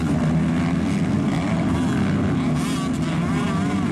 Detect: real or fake real